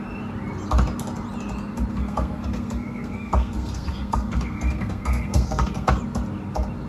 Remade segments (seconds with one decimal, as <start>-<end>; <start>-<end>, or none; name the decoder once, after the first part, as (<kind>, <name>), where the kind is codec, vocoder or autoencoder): 1.9-6.0 (codec, SNAC)